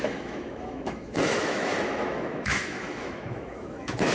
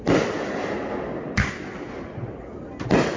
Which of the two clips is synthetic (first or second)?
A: first